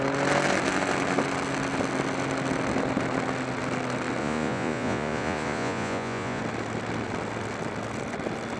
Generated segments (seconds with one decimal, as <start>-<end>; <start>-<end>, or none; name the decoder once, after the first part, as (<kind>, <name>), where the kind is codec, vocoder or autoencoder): 4.2-6.4 (vocoder, Vocos)